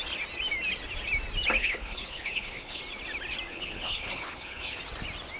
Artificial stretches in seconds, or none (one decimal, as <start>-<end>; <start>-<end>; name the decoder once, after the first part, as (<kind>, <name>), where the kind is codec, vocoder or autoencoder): 1.6-2.8 (codec, HILCodec); 3.5-4.8